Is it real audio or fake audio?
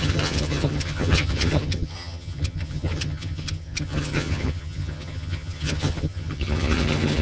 fake